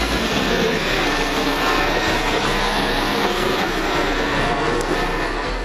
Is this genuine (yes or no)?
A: no